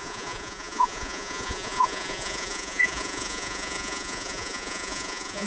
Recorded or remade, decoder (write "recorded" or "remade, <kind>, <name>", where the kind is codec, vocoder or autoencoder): remade, vocoder, Vocos